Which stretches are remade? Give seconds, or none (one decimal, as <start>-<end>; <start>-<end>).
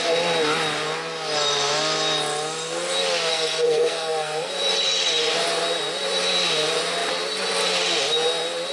3.3-4.5